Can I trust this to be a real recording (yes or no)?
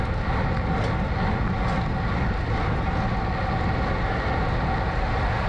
yes